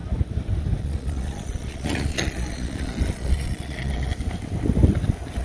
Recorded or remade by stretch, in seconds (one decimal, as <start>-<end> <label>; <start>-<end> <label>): 0.0-0.8 recorded; 0.8-4.1 remade; 4.1-5.4 recorded